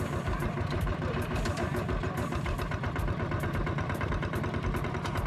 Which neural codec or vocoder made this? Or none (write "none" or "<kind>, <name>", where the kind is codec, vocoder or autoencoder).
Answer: vocoder, BigVGAN v2